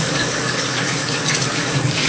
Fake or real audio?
fake